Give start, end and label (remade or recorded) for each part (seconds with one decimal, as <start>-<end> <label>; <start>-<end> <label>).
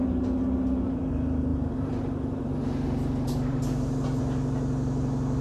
0.0-1.5 recorded; 1.5-4.2 remade; 4.2-5.4 recorded